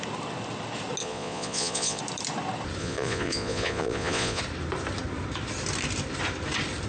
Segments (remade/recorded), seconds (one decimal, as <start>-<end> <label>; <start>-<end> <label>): 0.0-1.0 recorded; 1.0-2.0 remade; 2.0-2.8 recorded; 2.8-4.4 remade; 4.4-6.9 recorded